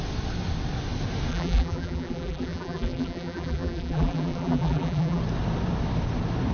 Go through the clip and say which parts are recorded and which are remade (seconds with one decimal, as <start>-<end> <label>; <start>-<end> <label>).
0.0-1.3 recorded; 1.3-5.2 remade; 5.2-6.5 recorded